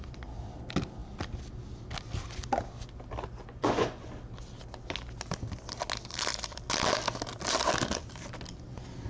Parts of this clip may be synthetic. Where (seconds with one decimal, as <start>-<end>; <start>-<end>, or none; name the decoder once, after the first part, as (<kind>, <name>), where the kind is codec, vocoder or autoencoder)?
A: 3.4-4.1 (vocoder, Vocos)